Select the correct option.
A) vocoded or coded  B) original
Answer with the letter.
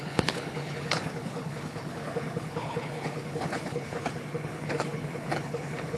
A